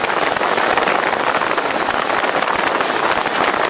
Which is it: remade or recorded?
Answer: recorded